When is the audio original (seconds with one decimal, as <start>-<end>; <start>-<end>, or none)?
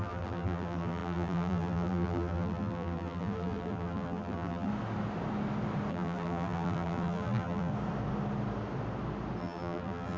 4.7-5.9; 7.7-9.4